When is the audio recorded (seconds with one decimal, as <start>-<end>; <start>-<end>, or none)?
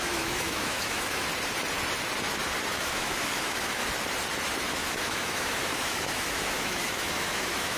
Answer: 1.3-2.7; 3.8-4.7